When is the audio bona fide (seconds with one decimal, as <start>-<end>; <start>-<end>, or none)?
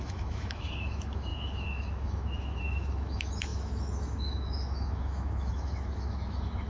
none